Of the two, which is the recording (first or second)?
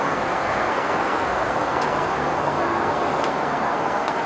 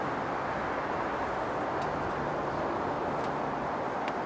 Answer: second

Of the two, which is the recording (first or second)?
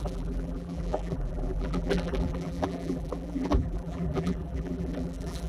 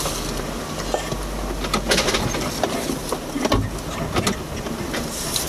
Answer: second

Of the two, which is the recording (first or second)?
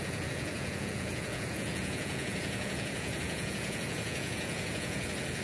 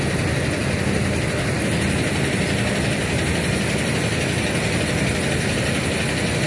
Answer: second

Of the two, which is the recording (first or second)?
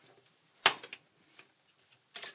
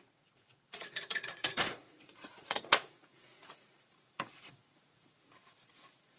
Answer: first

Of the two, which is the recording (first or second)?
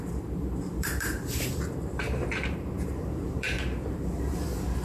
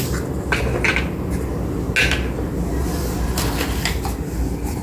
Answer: second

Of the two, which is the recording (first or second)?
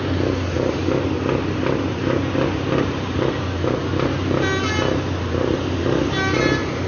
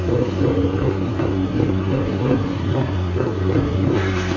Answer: first